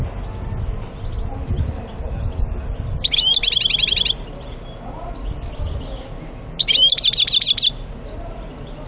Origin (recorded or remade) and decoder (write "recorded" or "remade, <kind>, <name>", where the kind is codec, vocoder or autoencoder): recorded